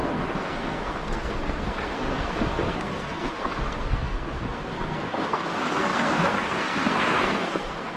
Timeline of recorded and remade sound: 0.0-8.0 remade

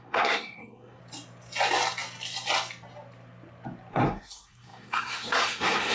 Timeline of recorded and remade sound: 0.0-1.0 remade; 1.0-3.9 recorded; 3.9-5.9 remade

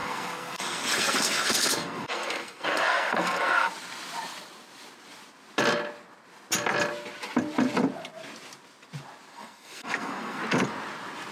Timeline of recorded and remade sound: 0.0-3.7 remade; 3.7-9.3 recorded; 9.3-10.4 remade; 10.4-11.3 recorded

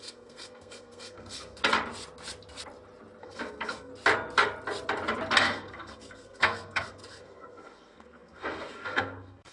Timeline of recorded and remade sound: 0.0-1.6 remade; 1.6-3.2 recorded; 3.2-3.9 remade; 3.9-5.4 recorded; 5.4-9.5 remade

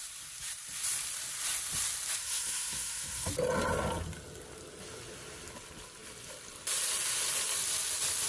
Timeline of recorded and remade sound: 0.0-2.2 recorded; 2.2-3.3 remade; 3.3-8.3 recorded

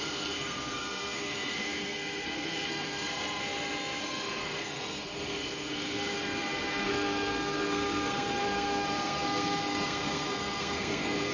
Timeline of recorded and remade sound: 0.0-3.4 remade; 3.4-4.0 recorded; 4.0-11.3 remade

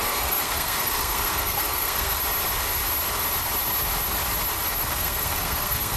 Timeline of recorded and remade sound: 0.0-2.2 remade; 2.2-4.9 recorded; 4.9-6.0 remade

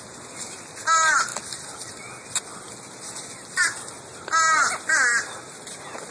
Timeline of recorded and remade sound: 0.0-6.1 recorded